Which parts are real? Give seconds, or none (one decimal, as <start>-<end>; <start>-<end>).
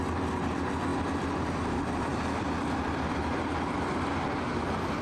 0.0-2.1